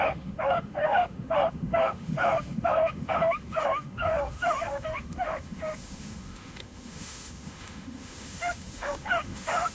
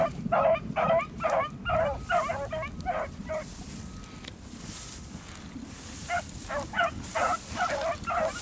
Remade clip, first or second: first